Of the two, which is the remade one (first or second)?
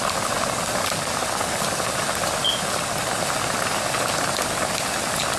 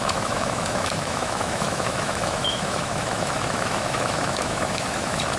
second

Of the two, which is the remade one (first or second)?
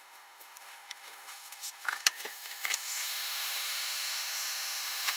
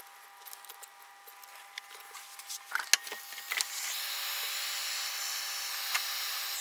first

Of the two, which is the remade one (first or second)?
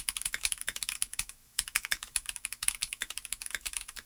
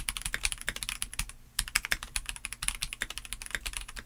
first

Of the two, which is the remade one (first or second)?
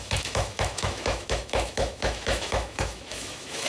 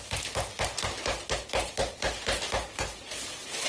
first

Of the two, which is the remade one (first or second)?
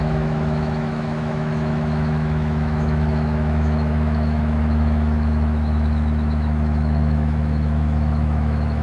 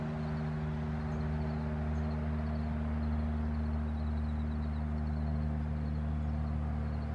first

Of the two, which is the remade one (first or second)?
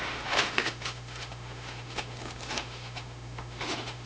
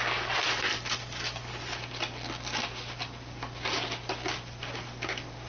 first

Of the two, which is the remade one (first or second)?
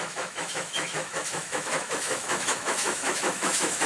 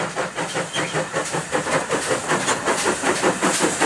first